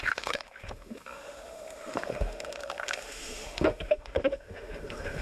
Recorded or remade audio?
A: remade